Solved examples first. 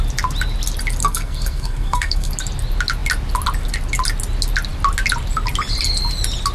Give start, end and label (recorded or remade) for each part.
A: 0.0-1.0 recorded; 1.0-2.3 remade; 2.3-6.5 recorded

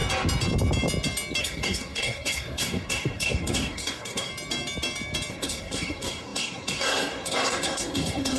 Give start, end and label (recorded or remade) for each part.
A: 0.0-1.4 recorded; 1.4-4.3 remade; 4.3-5.3 recorded; 5.3-8.4 remade